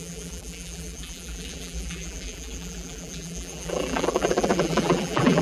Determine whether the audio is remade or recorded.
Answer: remade